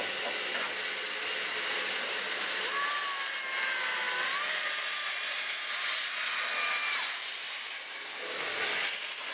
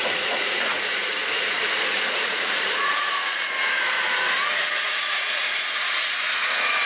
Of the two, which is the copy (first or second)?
second